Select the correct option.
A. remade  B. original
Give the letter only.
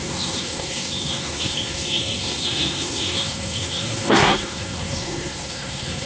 A